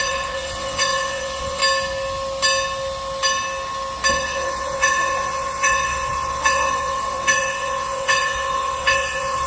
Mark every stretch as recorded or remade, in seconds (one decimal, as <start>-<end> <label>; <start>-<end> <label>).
0.0-1.6 remade; 1.6-4.1 recorded; 4.1-9.5 remade